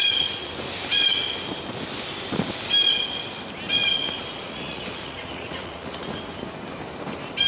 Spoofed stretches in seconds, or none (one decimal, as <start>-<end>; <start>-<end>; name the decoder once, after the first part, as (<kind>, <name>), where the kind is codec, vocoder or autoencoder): 0.0-0.5 (vocoder, Vocos); 4.3-6.1